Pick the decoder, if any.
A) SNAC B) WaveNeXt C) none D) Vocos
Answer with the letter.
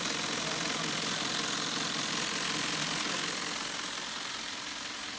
C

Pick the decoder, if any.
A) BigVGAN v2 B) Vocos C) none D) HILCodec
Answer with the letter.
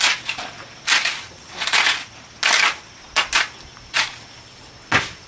C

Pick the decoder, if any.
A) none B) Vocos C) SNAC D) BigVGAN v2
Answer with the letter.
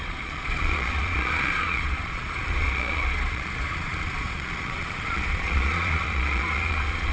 B